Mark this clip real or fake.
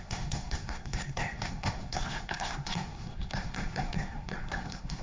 fake